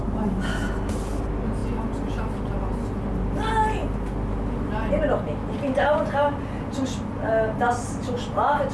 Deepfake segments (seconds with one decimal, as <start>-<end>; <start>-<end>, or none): none